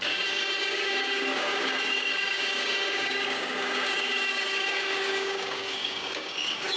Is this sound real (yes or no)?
no